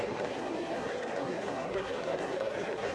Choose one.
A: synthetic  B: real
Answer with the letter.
A